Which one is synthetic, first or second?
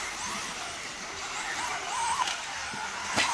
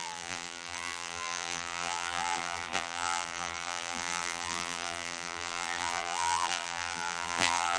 second